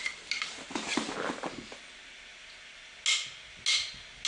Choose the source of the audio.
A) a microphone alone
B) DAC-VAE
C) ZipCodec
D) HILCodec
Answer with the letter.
A